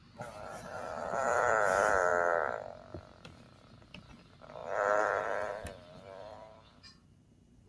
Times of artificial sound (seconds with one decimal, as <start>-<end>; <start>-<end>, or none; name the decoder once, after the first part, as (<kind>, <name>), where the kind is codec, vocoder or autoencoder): none